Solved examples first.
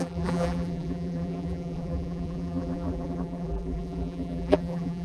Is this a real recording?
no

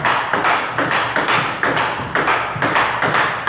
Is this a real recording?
yes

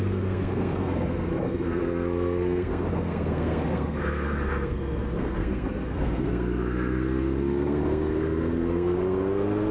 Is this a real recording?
no